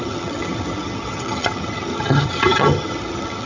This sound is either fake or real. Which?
fake